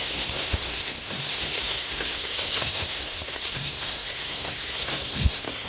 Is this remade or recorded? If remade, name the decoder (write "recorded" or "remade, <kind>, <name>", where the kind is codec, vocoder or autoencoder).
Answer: remade, codec, SNAC